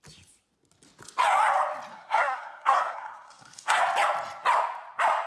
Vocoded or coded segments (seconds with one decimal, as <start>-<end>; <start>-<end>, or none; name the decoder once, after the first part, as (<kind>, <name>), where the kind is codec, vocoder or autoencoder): 1.9-3.8 (codec, SNAC)